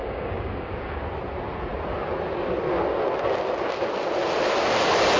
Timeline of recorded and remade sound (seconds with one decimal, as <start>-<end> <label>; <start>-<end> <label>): 0.0-1.0 remade; 1.0-5.2 recorded